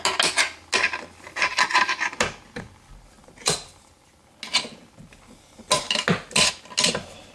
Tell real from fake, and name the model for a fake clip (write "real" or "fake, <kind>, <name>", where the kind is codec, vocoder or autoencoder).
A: real